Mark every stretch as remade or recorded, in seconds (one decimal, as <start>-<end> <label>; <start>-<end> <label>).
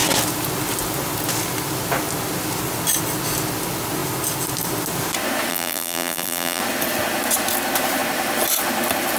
0.0-5.5 recorded; 5.5-6.6 remade; 6.6-9.2 recorded